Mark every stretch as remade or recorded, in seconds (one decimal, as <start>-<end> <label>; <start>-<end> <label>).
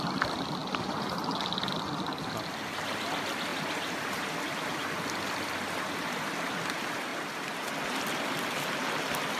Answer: 0.0-9.4 recorded